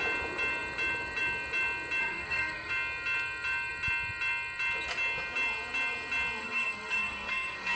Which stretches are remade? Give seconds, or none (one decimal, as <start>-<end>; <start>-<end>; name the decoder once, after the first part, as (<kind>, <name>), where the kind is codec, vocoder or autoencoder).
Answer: 2.0-2.7 (codec, SNAC); 6.4-7.8